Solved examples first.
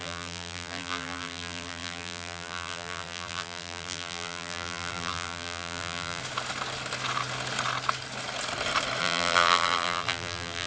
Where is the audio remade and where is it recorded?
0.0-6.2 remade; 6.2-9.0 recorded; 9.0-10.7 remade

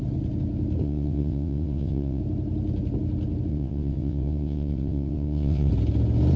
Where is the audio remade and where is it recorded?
0.0-0.8 recorded; 0.8-2.2 remade; 2.2-3.5 recorded; 3.5-5.7 remade; 5.7-6.4 recorded

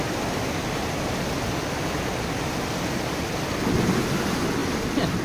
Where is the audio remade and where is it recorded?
0.0-5.2 recorded

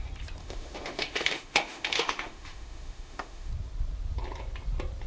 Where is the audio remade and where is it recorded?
0.0-0.4 recorded; 0.4-3.5 remade; 3.5-5.1 recorded

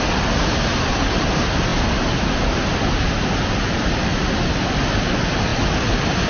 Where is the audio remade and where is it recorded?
0.0-1.7 recorded; 1.7-4.7 remade; 4.7-5.5 recorded; 5.5-6.3 remade

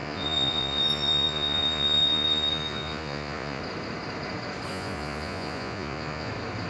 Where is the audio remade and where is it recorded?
0.0-3.6 remade; 3.6-4.7 recorded; 4.7-6.3 remade; 6.3-6.7 recorded